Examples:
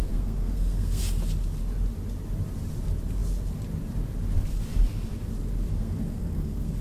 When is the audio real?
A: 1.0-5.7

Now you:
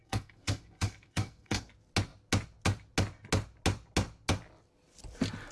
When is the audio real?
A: 1.7-5.5

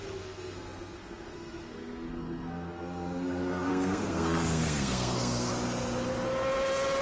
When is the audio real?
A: 5.5-7.0

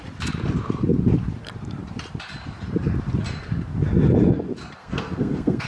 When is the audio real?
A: 0.0-4.8

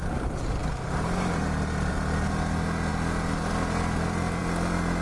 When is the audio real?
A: 0.0-5.0